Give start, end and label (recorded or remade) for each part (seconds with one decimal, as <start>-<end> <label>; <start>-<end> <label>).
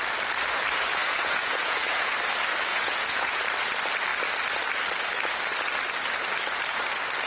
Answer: 0.0-1.0 recorded; 1.0-2.1 remade; 2.1-2.7 recorded; 2.7-3.4 remade; 3.4-7.3 recorded